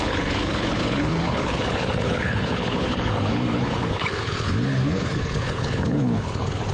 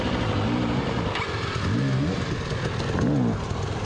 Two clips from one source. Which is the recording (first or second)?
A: second